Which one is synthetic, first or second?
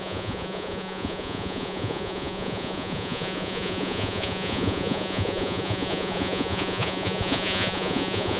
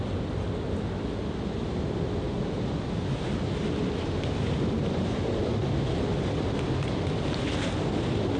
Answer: first